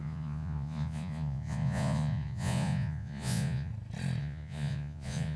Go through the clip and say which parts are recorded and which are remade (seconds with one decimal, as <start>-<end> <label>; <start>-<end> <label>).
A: 0.0-3.7 remade; 3.7-4.2 recorded; 4.2-5.4 remade